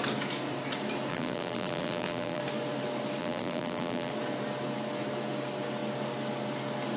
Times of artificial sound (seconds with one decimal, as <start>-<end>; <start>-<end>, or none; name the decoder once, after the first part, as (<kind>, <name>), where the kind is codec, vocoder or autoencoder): 1.1-2.4 (vocoder, BigVGAN v2); 3.2-4.1